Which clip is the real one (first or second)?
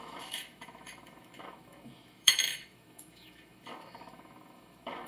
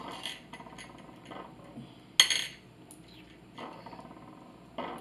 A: second